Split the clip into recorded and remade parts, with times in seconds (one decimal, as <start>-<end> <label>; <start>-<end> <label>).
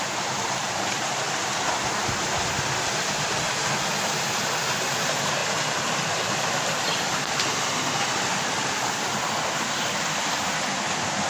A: 0.0-5.4 recorded; 5.4-10.4 remade; 10.4-11.3 recorded